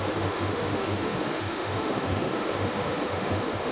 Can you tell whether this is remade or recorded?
remade